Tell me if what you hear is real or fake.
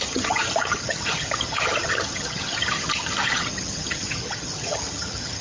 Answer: fake